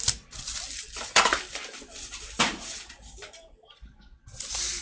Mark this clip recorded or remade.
recorded